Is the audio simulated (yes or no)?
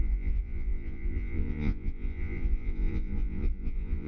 yes